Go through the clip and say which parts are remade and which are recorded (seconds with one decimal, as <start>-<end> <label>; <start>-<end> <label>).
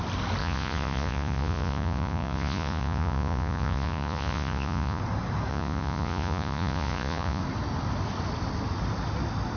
0.0-0.4 recorded; 0.4-5.0 remade; 5.0-5.5 recorded; 5.5-7.4 remade; 7.4-9.6 recorded